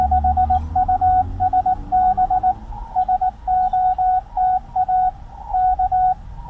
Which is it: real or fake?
real